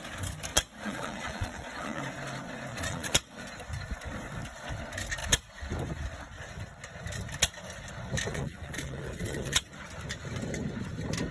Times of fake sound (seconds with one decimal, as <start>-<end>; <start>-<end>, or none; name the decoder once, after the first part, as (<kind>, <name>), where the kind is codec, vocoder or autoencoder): 0.5-2.0 (vocoder, Vocos); 2.7-3.4; 8.3-9.6